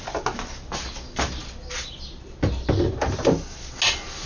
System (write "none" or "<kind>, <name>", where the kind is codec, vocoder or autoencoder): none